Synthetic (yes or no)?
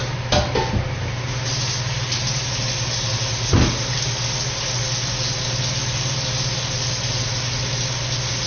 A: no